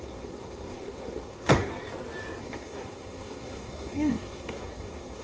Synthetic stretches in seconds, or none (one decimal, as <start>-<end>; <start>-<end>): 0.0-1.7; 2.4-5.2